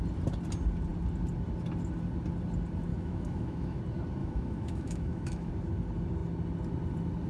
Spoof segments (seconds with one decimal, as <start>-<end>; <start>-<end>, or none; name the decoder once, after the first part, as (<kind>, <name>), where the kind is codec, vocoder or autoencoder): 2.9-3.8 (autoencoder, DAC-VAE); 4.2-5.5